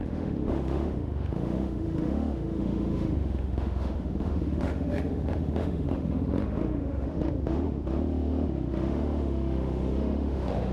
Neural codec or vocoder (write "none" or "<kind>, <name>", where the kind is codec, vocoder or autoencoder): autoencoder, DAC-VAE